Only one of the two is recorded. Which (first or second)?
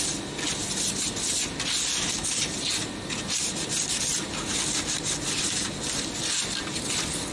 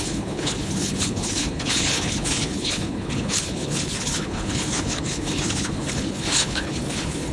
first